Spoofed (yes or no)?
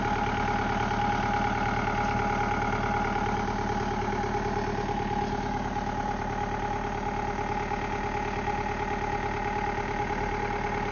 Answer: no